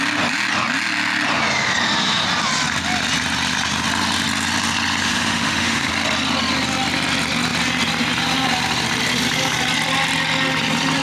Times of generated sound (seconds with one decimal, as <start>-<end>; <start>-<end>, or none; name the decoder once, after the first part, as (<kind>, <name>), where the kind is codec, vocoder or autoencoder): 5.0-5.9 (autoencoder, DAC-VAE)